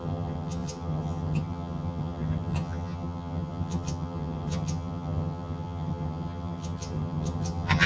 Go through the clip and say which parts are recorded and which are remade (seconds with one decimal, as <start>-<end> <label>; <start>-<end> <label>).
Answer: 0.0-7.9 remade